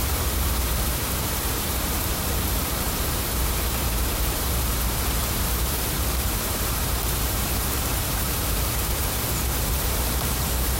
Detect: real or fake fake